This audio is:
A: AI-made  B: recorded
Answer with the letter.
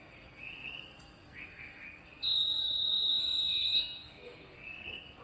A